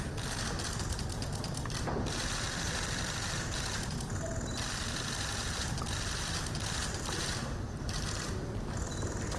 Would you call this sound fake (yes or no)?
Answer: yes